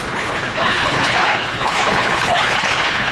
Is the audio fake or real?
fake